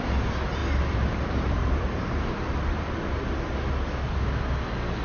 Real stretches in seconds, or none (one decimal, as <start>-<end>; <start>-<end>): 0.0-0.6; 2.9-5.0